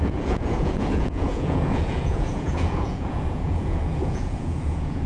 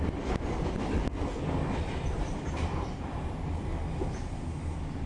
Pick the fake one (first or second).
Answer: first